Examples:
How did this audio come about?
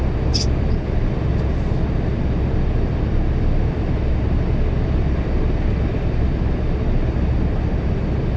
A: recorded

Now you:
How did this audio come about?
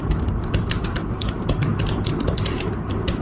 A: remade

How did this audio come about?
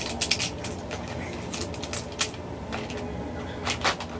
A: recorded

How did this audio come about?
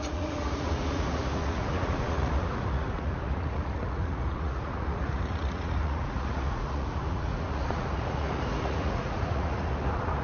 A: remade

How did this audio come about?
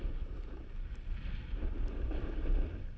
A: recorded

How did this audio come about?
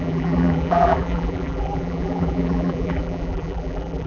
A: remade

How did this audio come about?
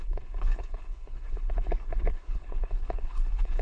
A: remade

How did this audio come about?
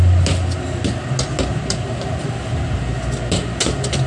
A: recorded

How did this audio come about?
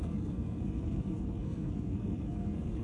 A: remade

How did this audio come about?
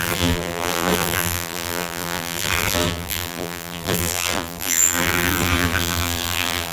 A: remade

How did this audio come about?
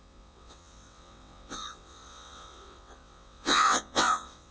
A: remade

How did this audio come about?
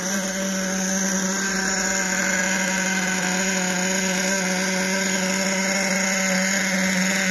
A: recorded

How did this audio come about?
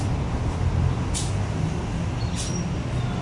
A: recorded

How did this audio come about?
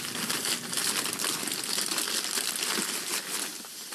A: recorded